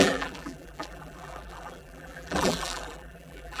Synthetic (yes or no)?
yes